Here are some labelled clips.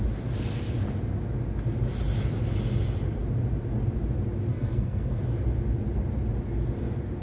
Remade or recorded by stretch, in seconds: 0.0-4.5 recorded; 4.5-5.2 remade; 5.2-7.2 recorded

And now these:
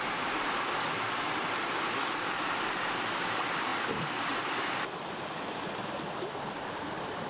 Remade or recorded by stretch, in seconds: 0.0-7.3 recorded

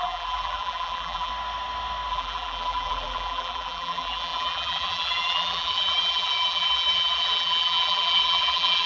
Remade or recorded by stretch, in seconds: 0.0-1.3 remade; 1.3-2.1 recorded; 2.1-8.9 remade

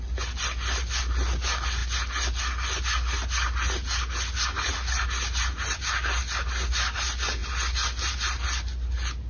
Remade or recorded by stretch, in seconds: 0.0-9.3 recorded